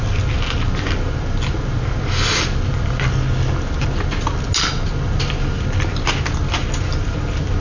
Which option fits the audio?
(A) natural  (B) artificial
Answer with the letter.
A